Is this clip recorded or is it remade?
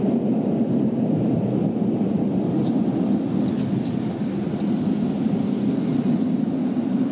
remade